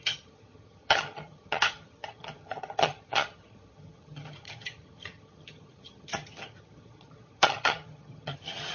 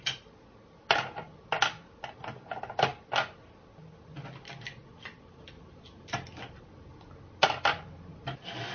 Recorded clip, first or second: second